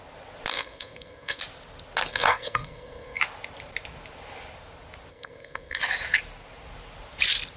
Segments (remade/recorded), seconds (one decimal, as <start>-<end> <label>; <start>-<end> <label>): 0.0-0.5 recorded; 0.5-1.4 remade; 1.4-2.1 recorded; 2.1-3.2 remade; 3.2-5.1 recorded; 5.1-5.8 remade; 5.8-7.6 recorded